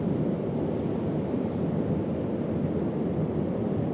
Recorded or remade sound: recorded